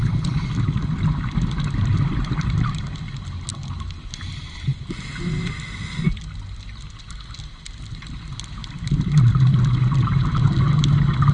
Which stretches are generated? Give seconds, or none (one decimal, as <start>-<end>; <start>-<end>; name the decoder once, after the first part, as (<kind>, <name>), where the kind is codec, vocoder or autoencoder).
none